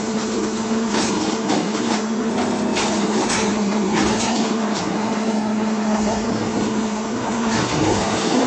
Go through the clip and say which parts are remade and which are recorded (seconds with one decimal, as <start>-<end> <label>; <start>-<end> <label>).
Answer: 0.0-2.3 remade; 2.3-3.0 recorded; 3.0-8.5 remade